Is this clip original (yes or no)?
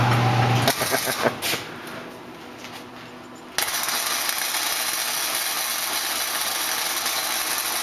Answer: yes